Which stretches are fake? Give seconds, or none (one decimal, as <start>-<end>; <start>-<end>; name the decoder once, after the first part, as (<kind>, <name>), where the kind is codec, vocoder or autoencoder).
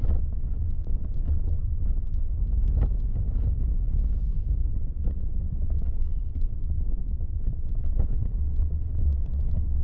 0.0-2.3 (vocoder, WaveNeXt); 4.7-9.8